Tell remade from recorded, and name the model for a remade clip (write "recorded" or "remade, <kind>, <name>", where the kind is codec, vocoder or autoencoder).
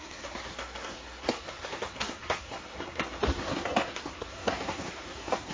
remade, codec, SNAC